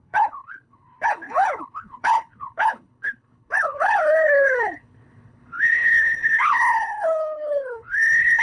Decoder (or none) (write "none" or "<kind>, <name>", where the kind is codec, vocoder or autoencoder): codec, HILCodec